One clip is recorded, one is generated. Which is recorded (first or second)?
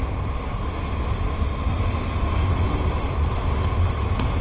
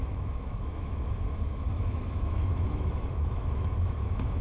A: first